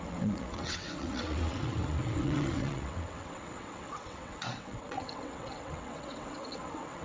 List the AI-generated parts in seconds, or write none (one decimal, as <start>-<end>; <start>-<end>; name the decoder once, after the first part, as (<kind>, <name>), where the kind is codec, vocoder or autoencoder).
0.0-7.0 (vocoder, WaveNeXt)